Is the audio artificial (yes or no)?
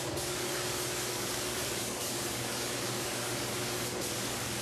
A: yes